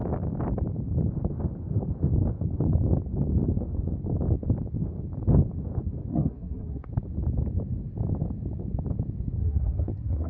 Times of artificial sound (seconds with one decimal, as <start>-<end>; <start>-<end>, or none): 6.1-6.9; 9.4-10.3

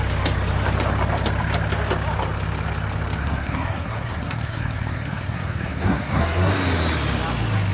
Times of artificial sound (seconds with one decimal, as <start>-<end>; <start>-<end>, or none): 3.2-6.5

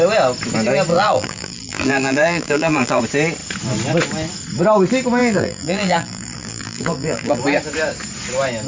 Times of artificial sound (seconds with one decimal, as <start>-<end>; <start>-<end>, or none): 0.9-3.0; 5.2-7.4